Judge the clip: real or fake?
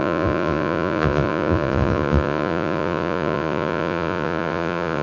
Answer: fake